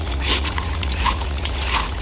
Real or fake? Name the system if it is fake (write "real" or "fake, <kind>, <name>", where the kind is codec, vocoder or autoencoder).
fake, vocoder, Vocos